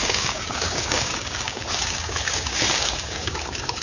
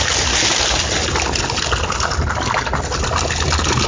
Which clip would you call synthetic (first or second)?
first